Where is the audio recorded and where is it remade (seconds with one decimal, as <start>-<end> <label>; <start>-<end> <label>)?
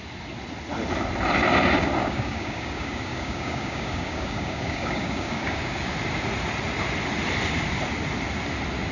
0.0-2.0 recorded; 2.0-5.9 remade; 5.9-8.9 recorded